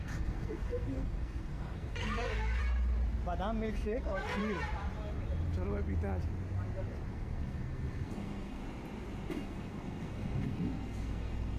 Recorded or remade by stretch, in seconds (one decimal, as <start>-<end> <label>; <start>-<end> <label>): 0.0-2.6 remade; 2.6-3.7 recorded; 3.7-4.4 remade; 4.4-7.1 recorded; 7.1-8.6 remade; 8.6-9.3 recorded; 9.3-11.6 remade